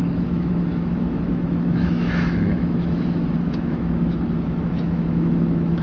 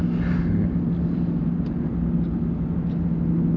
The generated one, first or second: first